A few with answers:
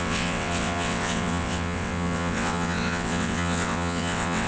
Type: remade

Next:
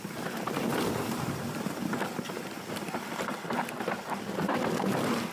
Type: recorded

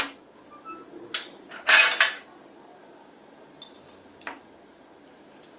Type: recorded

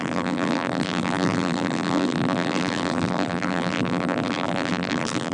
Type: remade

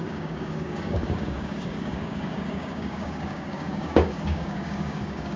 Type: remade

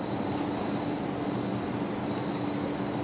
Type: recorded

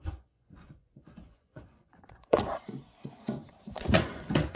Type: remade